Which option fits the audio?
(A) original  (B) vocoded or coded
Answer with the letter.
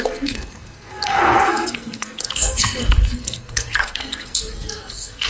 B